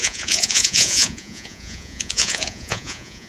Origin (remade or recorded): remade